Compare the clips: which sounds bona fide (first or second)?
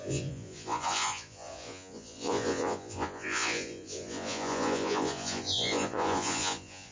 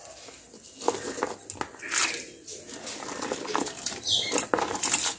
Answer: second